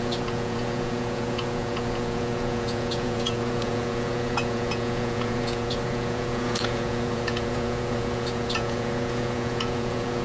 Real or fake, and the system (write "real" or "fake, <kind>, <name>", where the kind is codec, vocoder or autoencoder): fake, vocoder, Vocos